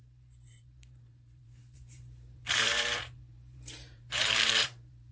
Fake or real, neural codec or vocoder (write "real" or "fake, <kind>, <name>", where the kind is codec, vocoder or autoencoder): fake, vocoder, BigVGAN v2